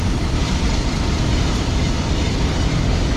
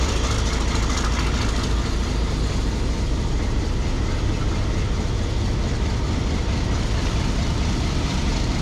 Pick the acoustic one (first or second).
second